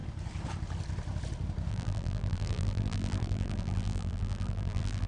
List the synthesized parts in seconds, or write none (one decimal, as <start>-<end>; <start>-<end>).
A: 1.7-5.1